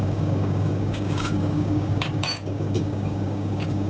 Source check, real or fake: fake